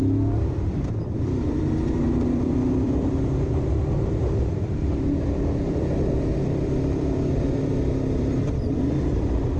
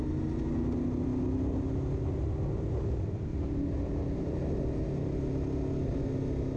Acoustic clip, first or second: second